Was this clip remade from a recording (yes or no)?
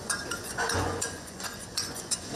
yes